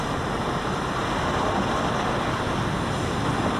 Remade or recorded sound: recorded